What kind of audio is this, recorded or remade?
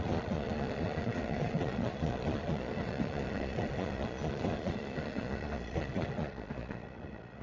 remade